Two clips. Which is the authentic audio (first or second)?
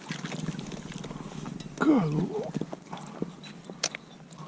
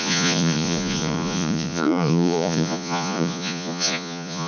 first